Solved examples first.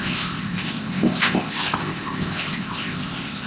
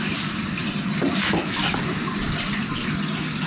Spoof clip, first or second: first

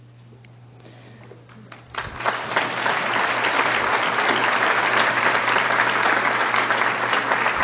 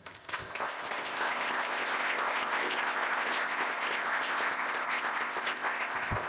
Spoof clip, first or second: second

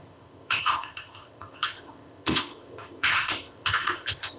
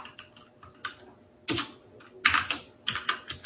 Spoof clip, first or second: first